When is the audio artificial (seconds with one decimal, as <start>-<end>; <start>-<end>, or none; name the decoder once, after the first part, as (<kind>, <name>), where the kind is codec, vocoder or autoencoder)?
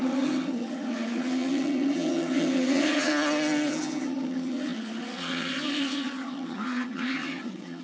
0.0-3.1 (vocoder, HiFi-GAN); 3.7-7.8